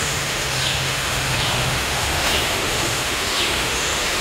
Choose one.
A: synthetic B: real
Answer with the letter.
A